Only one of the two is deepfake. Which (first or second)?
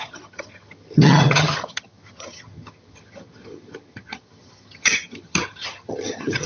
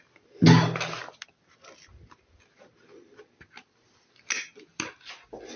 first